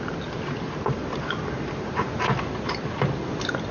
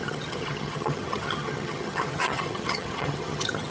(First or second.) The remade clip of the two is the second